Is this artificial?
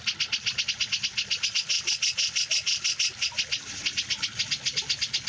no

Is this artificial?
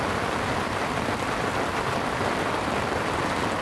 no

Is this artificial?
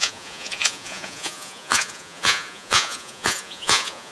yes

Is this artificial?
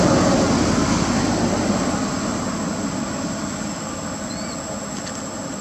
no